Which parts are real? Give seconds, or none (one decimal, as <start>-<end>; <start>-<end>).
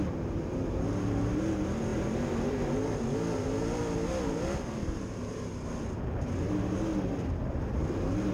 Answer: 0.0-8.3